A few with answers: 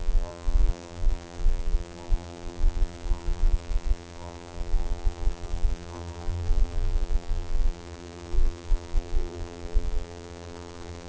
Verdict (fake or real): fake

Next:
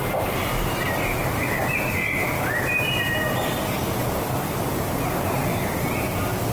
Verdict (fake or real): real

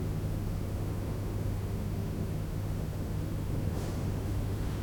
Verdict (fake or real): fake